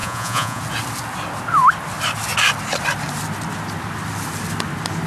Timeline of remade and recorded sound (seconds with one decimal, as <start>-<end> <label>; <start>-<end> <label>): 0.0-0.6 remade; 0.6-5.1 recorded